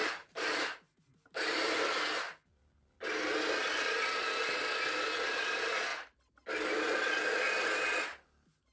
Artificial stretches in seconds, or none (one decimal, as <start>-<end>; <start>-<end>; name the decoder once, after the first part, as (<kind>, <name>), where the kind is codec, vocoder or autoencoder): 0.0-1.7 (vocoder, BigVGAN v2)